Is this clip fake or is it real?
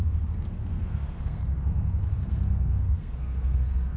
fake